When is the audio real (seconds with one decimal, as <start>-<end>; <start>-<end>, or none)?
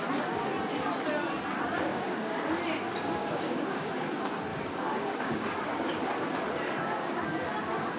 0.0-1.9; 2.5-3.2; 3.9-4.5; 6.0-8.0